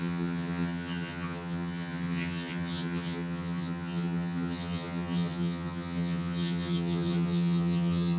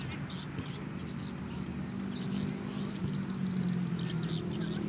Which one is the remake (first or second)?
first